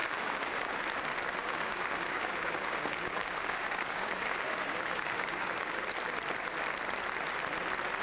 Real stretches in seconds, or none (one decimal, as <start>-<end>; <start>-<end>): 0.8-1.4; 5.8-8.0